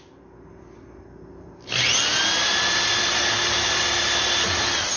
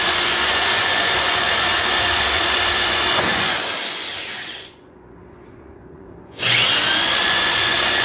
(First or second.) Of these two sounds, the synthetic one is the second